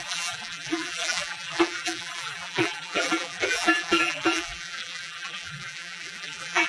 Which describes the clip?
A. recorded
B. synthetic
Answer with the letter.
B